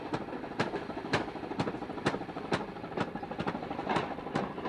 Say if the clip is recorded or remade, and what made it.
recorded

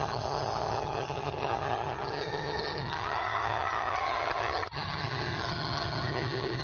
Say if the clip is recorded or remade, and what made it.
remade, vocoder, HiFi-GAN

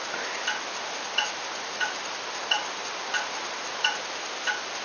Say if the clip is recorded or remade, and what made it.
recorded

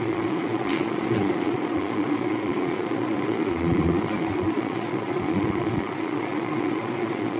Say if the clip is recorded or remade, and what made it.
remade, vocoder, Vocos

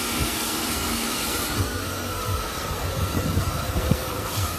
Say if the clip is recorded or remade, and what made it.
remade, codec, SNAC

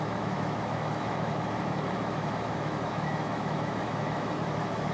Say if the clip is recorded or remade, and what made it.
remade, autoencoder, DAC-VAE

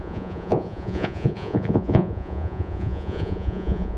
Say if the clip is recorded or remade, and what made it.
remade, vocoder, Vocos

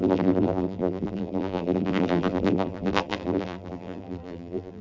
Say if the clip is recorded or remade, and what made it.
remade, vocoder, BigVGAN v2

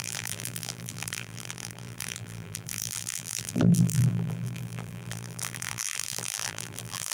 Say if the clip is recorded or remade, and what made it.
remade, vocoder, BigVGAN v2